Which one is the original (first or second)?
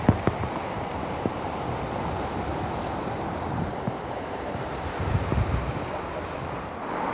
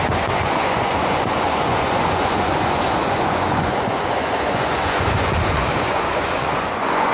first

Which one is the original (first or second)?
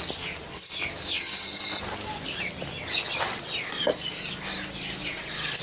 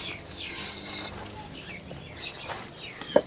first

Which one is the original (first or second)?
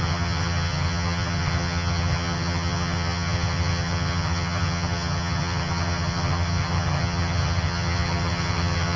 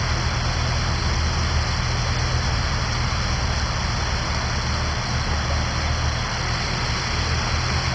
second